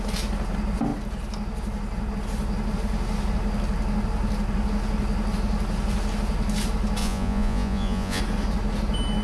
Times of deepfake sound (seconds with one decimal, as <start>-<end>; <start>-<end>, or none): 7.0-8.2

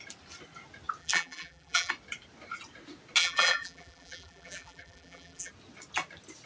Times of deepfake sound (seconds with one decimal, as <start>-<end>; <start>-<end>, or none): 1.0-1.9; 3.2-5.5

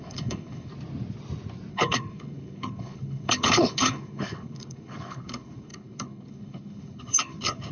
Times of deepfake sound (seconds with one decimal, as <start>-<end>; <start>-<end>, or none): 0.0-0.7; 1.7-7.7